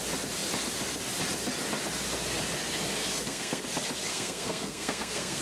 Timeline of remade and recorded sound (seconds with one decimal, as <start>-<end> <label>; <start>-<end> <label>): 0.0-3.1 recorded; 3.1-3.6 remade; 3.6-4.1 recorded; 4.1-5.4 remade